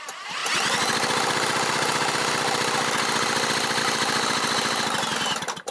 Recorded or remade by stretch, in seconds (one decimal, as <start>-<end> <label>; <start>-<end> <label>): 0.0-5.7 recorded